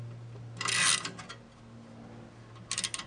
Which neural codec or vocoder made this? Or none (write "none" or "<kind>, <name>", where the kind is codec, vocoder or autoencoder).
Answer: none